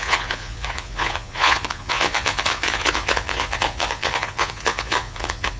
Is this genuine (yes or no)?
no